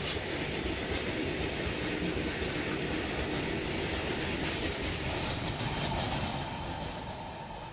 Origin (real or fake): real